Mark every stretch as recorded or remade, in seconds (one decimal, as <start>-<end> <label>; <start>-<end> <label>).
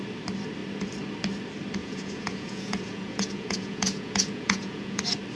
0.0-1.8 recorded; 1.8-5.0 remade; 5.0-5.4 recorded